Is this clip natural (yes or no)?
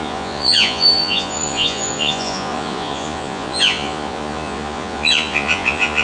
no